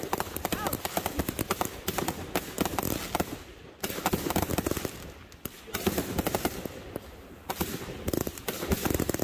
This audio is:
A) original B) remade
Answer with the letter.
A